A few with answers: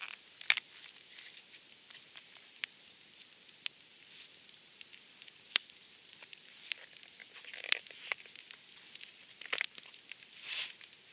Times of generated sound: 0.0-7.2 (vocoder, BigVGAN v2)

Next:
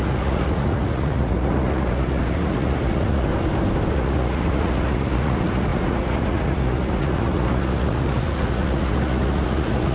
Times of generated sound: 0.0-3.3 (vocoder, Vocos); 3.9-9.9

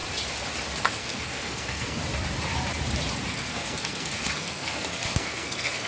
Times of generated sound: 0.8-2.0 (codec, SNAC); 3.3-5.9

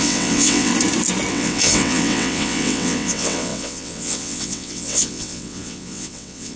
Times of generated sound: 0.0-0.7 (vocoder, WaveNeXt); 1.3-6.6

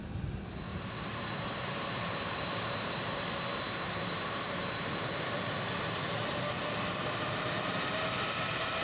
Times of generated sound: 0.7-4.7 (vocoder, BigVGAN v2)

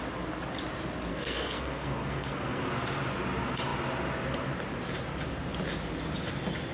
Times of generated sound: 1.1-2.6 (codec, SNAC)

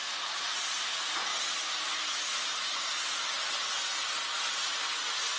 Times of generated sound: 0.0-0.6 (vocoder, Vocos)

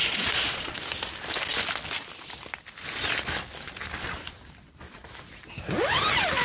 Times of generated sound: 0.0-0.8 (vocoder, Vocos)